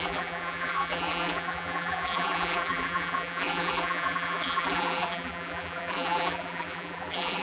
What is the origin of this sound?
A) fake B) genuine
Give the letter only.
A